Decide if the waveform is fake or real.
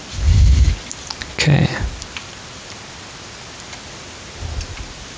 real